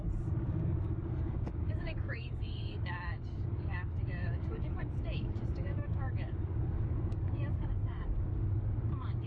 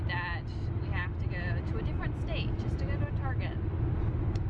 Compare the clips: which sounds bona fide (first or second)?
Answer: second